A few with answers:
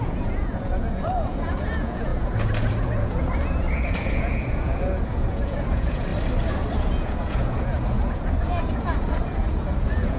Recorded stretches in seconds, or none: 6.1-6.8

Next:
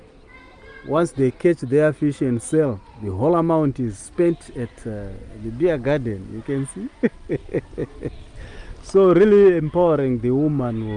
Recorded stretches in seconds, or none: 0.0-11.0

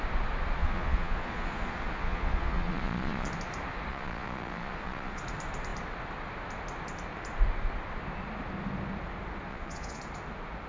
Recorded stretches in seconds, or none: 0.0-0.6; 3.3-3.9; 5.2-9.5; 10.0-10.7

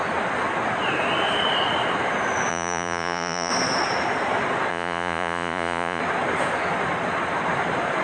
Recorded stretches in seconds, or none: 0.0-2.5; 3.5-4.7; 6.0-8.0

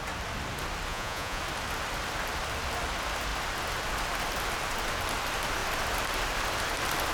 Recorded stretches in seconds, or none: 0.0-0.9; 1.4-7.1